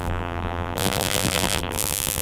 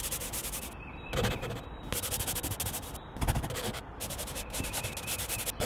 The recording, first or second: second